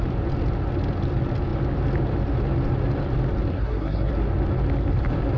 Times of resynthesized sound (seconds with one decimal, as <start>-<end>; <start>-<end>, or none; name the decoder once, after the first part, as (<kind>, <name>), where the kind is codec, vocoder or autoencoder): 3.5-4.1 (codec, SNAC)